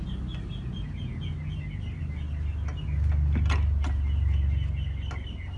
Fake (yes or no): no